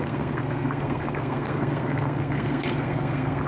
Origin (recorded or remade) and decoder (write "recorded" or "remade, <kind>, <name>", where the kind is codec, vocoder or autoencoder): remade, codec, SNAC